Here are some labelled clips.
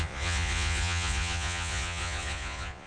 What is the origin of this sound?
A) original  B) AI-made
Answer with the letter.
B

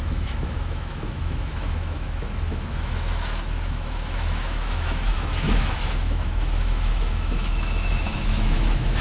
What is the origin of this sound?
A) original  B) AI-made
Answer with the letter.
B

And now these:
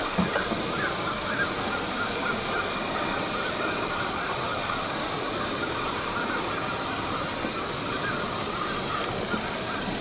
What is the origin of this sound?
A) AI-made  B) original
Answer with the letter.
B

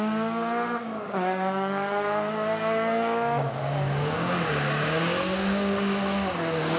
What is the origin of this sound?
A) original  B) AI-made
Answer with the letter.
B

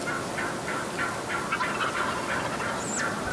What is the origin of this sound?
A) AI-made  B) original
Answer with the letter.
B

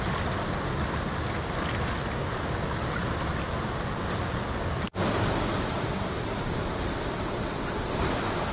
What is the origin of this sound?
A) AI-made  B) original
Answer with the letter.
B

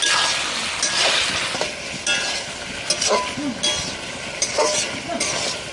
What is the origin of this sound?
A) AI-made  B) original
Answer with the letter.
B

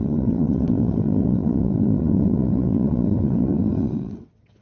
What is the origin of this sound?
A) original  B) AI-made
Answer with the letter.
B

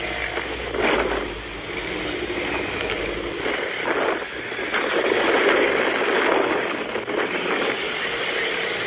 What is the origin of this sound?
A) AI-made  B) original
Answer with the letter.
B